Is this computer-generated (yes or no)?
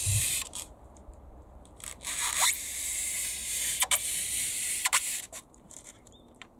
yes